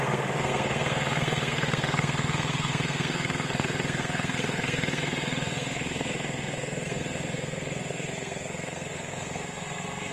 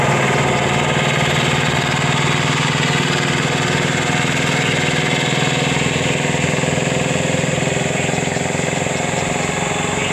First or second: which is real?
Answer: second